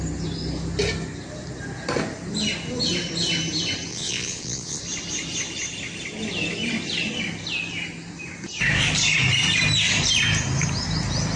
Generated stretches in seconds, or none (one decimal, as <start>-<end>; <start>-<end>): 3.9-4.8